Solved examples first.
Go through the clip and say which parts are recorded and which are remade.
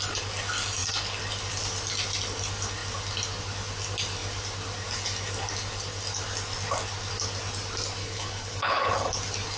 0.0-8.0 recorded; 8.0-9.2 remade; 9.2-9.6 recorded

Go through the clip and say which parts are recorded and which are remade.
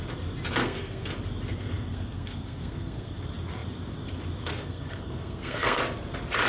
0.0-0.6 recorded; 0.6-1.1 remade; 1.1-1.5 recorded; 1.5-3.2 remade; 3.2-4.5 recorded; 4.5-5.8 remade; 5.8-6.5 recorded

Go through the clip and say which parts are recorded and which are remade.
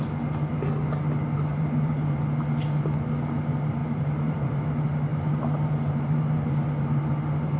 0.0-1.5 recorded; 1.5-2.2 remade; 2.2-3.8 recorded; 3.8-4.6 remade; 4.6-5.1 recorded; 5.1-7.1 remade; 7.1-7.6 recorded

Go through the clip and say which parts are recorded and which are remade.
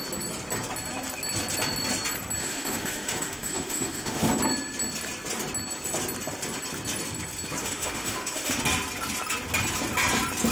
0.0-2.4 recorded; 2.4-4.3 remade; 4.3-7.6 recorded; 7.6-8.6 remade; 8.6-10.5 recorded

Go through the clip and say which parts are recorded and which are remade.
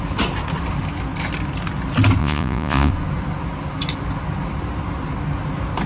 0.0-2.2 recorded; 2.2-2.9 remade; 2.9-5.9 recorded